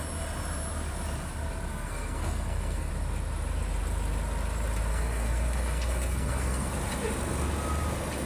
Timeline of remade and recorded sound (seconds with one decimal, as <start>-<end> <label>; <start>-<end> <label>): 0.0-1.7 recorded; 1.7-2.9 remade; 2.9-4.9 recorded; 4.9-6.7 remade; 6.7-8.3 recorded

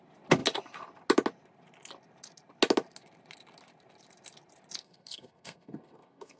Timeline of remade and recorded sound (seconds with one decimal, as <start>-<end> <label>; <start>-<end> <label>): 0.0-4.8 recorded; 4.8-6.4 remade

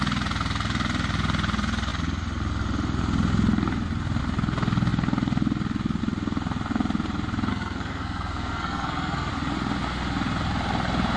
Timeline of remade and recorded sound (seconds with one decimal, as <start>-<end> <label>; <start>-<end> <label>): 0.0-7.5 recorded; 7.5-9.3 remade; 9.3-11.2 recorded

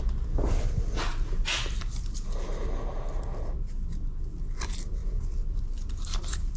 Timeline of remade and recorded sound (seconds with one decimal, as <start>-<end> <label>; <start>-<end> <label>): 0.0-6.6 recorded

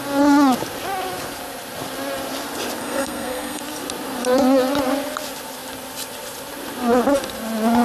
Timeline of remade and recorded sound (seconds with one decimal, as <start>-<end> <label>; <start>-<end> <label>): 0.0-2.8 recorded; 2.8-3.6 remade; 3.6-7.8 recorded

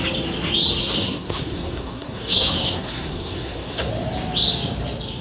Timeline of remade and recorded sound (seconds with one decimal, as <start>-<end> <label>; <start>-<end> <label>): 0.0-0.8 recorded; 0.8-3.9 remade; 3.9-5.2 recorded